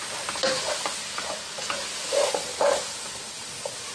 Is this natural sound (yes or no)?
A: yes